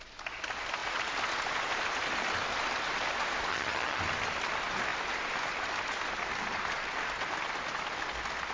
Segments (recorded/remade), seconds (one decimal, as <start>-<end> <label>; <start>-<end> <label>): 0.0-3.5 recorded; 3.5-4.0 remade; 4.0-8.5 recorded